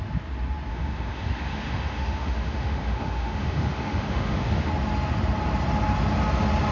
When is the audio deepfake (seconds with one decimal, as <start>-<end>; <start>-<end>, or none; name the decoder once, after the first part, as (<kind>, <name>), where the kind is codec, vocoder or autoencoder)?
0.7-4.7 (autoencoder, DAC-VAE)